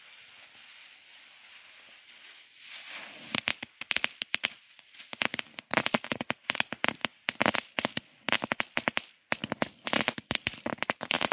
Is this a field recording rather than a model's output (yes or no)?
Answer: yes